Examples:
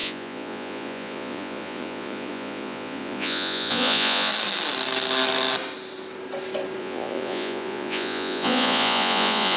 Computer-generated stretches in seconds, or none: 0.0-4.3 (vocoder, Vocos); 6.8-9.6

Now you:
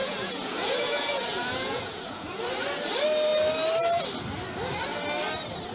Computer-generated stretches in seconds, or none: 0.0-2.4 (vocoder, Vocos)

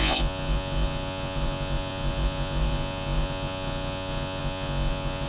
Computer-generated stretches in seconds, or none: 0.0-5.3 (vocoder, Vocos)